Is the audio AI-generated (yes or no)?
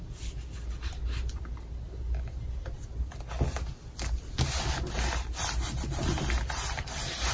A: no